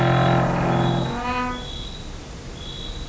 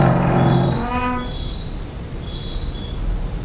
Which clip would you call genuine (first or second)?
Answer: first